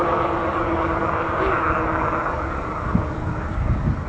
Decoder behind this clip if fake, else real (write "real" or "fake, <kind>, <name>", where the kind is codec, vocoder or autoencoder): fake, codec, DAC